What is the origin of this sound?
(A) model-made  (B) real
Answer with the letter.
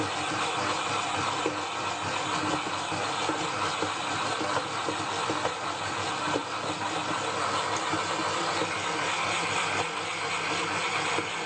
B